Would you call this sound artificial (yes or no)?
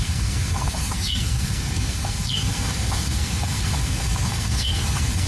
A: yes